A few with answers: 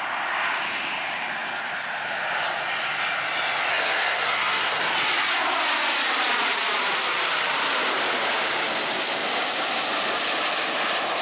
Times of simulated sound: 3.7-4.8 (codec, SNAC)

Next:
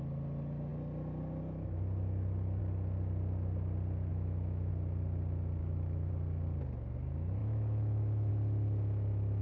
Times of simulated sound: 4.1-4.7 (autoencoder, DAC-VAE); 5.6-6.1; 7.4-8.3

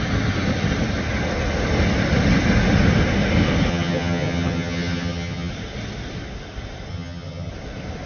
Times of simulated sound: 3.7-5.5 (vocoder, HiFi-GAN); 6.9-7.5